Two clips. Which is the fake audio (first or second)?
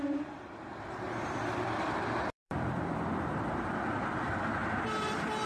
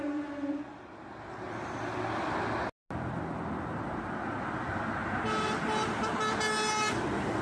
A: first